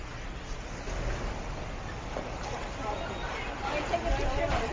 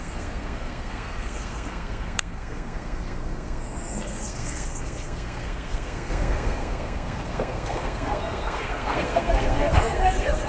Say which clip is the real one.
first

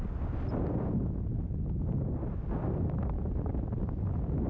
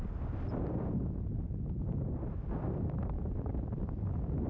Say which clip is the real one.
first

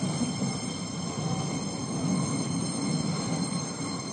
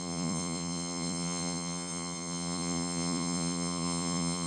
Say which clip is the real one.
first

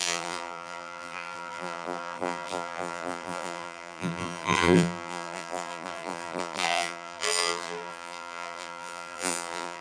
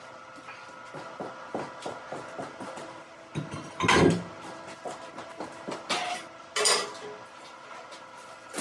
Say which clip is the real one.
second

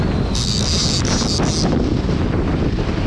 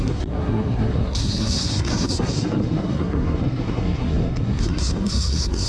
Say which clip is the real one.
first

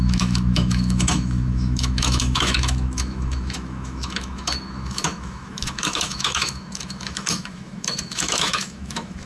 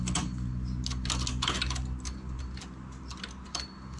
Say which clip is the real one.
second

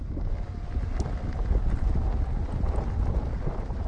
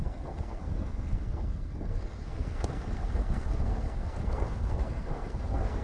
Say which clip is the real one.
first